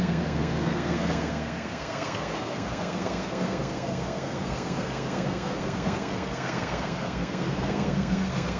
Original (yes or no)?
no